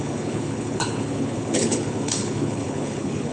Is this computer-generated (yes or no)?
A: yes